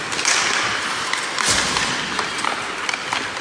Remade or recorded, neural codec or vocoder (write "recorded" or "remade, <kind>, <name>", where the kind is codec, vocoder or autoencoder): recorded